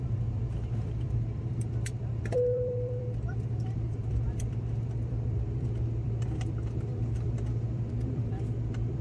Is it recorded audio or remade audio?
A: remade